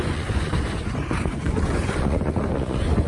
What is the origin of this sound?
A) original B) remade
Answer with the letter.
B